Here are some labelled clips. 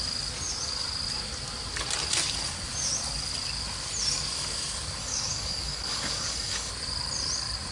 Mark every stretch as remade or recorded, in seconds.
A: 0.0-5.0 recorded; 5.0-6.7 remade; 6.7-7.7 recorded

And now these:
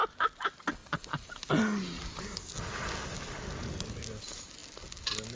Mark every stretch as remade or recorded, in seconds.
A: 0.0-5.4 recorded